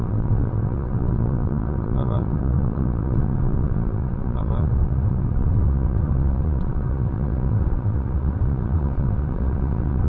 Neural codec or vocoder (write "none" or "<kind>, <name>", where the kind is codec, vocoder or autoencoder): vocoder, WaveNeXt